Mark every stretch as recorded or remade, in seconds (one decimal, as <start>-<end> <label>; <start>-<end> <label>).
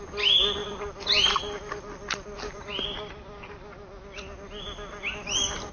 0.0-0.6 recorded; 0.6-2.7 remade; 2.7-5.7 recorded